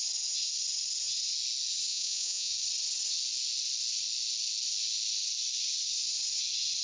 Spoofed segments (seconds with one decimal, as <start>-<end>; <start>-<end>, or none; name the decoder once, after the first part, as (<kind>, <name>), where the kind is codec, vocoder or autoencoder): 1.9-2.5 (vocoder, Vocos)